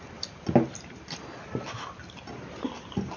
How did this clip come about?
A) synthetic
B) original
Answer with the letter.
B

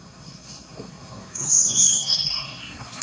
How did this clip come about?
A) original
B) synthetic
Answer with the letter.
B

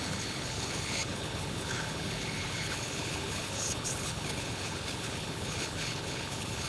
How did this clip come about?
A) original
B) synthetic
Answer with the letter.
B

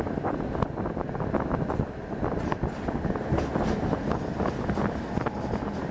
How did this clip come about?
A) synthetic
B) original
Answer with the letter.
B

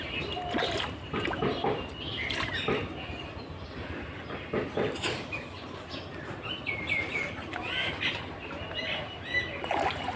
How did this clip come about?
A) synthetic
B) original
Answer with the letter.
B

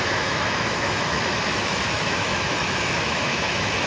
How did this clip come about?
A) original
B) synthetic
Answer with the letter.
B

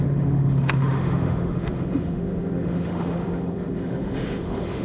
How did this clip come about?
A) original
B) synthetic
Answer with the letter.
B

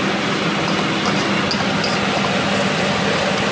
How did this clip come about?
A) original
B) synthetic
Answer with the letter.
A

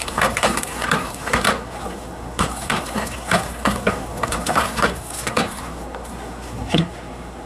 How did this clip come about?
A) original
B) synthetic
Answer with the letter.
B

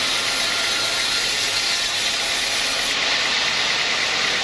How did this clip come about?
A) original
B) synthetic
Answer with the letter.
A